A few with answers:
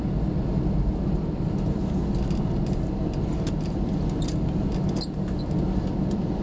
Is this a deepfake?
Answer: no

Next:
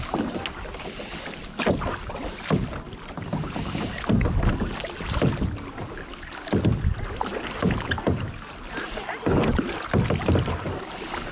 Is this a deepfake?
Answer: no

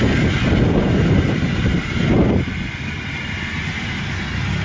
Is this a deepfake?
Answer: no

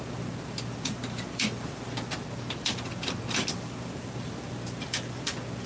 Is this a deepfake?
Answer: no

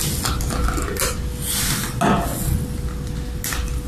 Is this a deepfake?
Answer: no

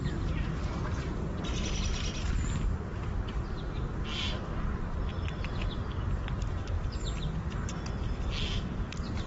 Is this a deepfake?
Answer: no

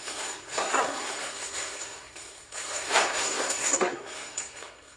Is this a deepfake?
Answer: yes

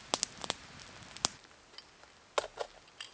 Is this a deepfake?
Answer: no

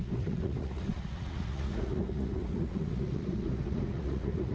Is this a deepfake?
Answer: yes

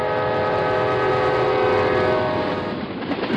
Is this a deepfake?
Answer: no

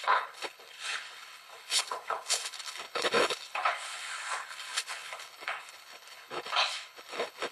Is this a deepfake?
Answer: yes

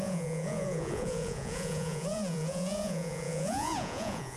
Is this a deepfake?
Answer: yes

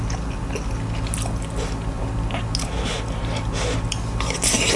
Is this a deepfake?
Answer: no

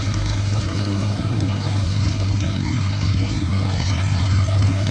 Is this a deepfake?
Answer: yes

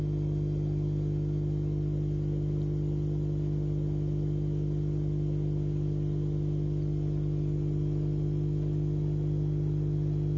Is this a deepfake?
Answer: no